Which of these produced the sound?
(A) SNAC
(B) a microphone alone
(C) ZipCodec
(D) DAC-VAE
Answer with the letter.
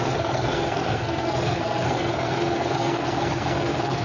A